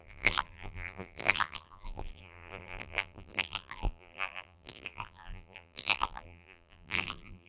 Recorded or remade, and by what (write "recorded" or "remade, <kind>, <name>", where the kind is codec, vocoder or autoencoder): remade, vocoder, BigVGAN v2